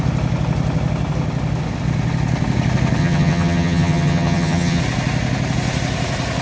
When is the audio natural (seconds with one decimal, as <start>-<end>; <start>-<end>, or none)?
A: 0.0-3.0; 4.8-6.4